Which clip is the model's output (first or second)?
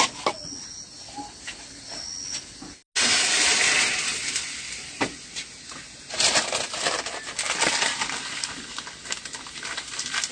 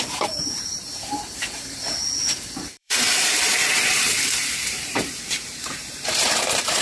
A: second